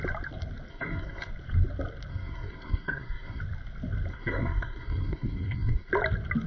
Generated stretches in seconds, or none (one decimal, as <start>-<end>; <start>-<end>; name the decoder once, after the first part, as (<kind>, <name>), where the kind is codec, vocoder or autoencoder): 0.7-1.3 (codec, SNAC); 2.1-3.4; 4.1-5.9